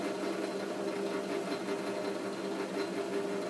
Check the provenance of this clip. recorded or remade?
recorded